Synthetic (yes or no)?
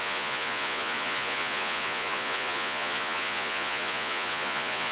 yes